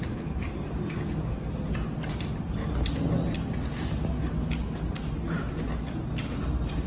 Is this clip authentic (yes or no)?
yes